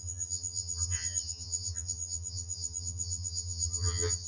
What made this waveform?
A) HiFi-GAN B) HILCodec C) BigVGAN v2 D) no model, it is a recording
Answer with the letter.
A